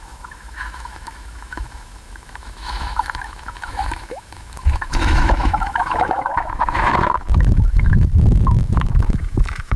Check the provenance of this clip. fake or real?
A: fake